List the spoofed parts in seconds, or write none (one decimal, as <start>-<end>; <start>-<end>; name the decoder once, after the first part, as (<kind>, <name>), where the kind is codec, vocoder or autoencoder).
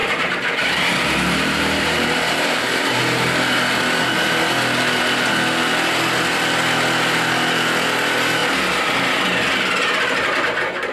0.0-3.0 (vocoder, BigVGAN v2)